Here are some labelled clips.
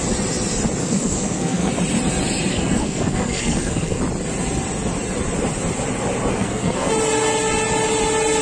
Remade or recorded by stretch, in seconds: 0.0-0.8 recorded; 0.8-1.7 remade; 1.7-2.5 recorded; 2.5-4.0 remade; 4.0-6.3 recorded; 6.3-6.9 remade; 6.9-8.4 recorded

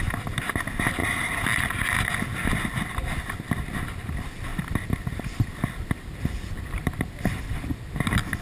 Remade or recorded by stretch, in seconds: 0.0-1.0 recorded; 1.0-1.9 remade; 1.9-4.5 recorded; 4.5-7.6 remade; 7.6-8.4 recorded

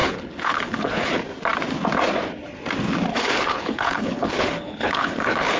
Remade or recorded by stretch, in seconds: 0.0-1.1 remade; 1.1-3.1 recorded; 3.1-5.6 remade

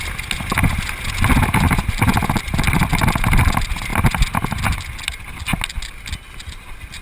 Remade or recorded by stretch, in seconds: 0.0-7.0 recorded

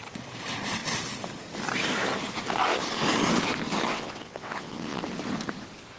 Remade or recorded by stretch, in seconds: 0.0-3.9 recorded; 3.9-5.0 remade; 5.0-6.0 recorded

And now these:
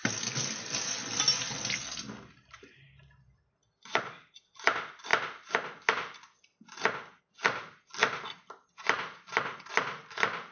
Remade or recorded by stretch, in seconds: 0.0-10.5 recorded

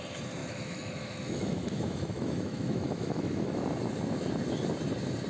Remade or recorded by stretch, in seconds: 0.0-0.4 recorded; 0.4-3.6 remade; 3.6-5.3 recorded

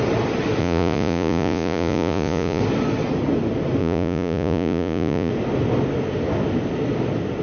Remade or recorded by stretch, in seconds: 0.0-0.6 recorded; 0.6-2.6 remade; 2.6-3.8 recorded; 3.8-5.3 remade; 5.3-7.4 recorded